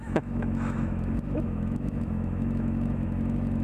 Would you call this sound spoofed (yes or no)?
yes